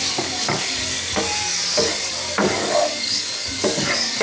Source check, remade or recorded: remade